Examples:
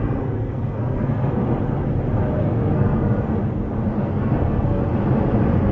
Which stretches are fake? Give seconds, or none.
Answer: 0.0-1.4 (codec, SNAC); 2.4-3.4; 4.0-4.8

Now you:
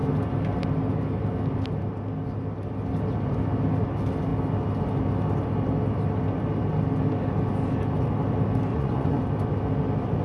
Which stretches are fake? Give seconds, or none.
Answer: 8.7-9.2 (vocoder, Vocos)